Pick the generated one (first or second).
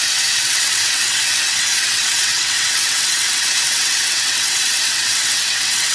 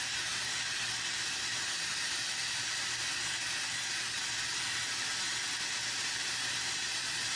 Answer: first